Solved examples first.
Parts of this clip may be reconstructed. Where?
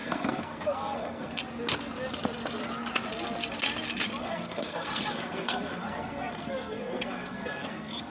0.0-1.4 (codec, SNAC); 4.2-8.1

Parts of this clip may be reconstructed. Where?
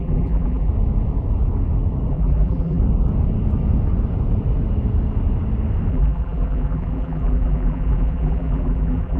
0.0-0.7 (vocoder, BigVGAN v2); 2.1-2.8; 5.9-9.2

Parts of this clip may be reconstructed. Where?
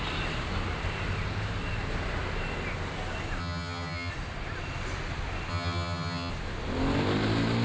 3.4-4.1 (vocoder, HiFi-GAN); 5.5-6.3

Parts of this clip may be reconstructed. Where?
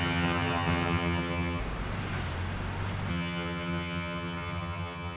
0.0-1.6 (vocoder, HiFi-GAN); 3.1-5.2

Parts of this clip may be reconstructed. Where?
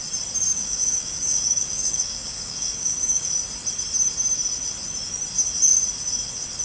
0.5-3.3 (codec, DAC)